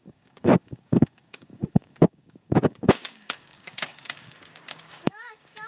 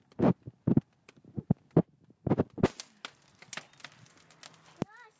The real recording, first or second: second